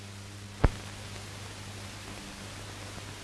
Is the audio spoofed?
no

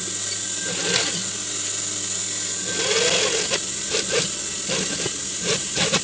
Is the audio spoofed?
no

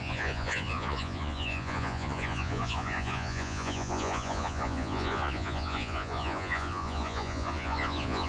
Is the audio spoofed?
yes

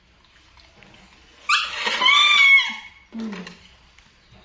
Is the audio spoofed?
no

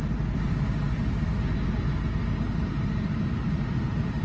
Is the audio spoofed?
no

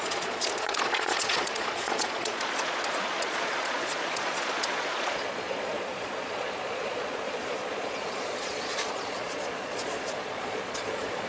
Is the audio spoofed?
yes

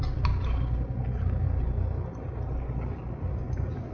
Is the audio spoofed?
no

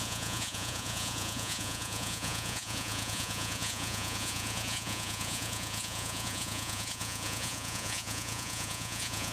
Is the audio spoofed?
yes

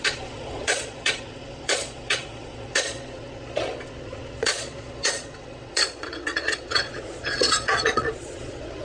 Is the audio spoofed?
yes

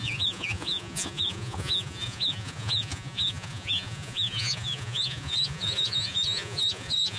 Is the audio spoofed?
yes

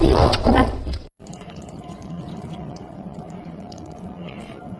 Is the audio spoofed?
yes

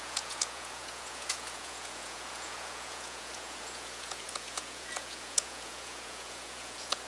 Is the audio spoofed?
yes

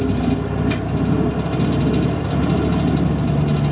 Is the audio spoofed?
no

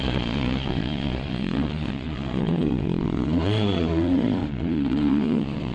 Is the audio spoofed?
yes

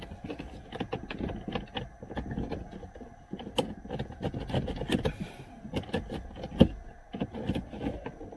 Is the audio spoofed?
no